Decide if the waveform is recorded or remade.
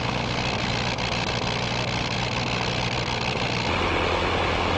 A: recorded